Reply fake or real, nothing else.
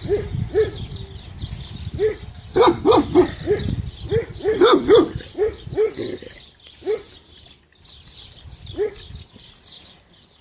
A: real